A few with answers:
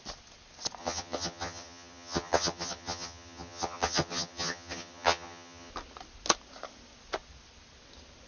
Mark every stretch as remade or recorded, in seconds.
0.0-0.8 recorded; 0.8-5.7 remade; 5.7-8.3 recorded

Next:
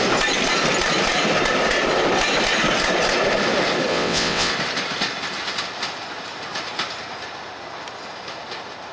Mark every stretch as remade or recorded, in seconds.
0.0-3.9 recorded; 3.9-4.5 remade; 4.5-8.9 recorded